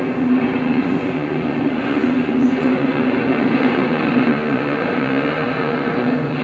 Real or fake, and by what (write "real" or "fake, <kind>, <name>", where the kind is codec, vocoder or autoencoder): fake, vocoder, Vocos